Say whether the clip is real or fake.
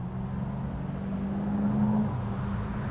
real